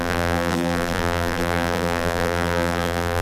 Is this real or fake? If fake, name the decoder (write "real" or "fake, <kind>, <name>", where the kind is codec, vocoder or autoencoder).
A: fake, vocoder, BigVGAN v2